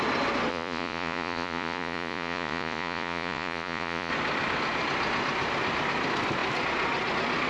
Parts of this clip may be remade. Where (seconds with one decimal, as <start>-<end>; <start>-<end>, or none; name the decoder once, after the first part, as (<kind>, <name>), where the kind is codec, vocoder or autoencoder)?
0.5-4.1 (vocoder, Vocos)